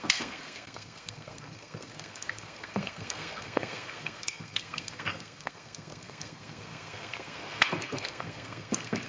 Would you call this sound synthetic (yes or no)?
yes